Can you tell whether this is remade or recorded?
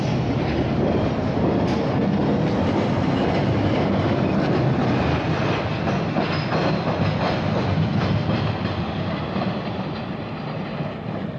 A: recorded